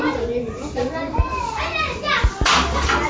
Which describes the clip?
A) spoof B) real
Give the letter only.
B